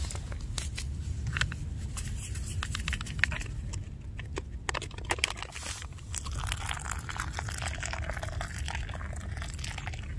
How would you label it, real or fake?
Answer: real